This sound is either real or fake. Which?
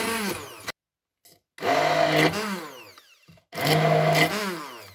real